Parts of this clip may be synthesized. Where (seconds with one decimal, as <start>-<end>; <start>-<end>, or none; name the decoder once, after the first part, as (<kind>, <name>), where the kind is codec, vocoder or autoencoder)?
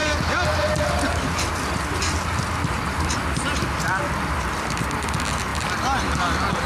none